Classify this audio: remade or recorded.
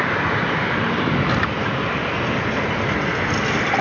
recorded